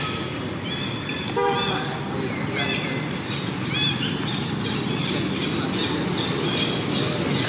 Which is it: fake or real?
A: real